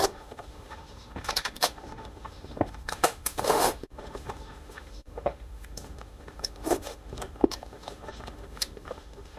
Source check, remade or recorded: remade